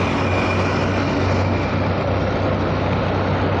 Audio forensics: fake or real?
real